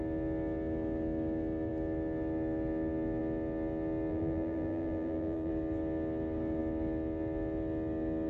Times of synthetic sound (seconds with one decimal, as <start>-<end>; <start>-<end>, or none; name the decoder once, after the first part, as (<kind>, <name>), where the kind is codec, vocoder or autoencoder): 4.1-5.5 (vocoder, BigVGAN v2)